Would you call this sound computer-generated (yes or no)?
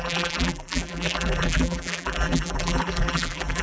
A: yes